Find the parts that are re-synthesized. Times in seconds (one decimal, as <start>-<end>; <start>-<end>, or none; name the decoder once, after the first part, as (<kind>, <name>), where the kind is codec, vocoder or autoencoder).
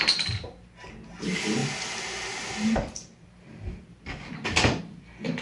none